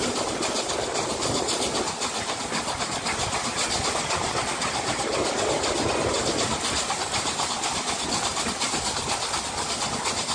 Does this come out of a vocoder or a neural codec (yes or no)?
no